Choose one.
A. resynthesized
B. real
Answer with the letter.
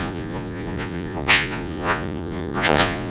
A